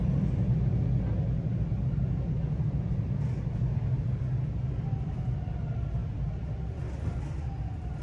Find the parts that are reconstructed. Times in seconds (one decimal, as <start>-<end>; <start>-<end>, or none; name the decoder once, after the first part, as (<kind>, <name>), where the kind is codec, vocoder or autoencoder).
none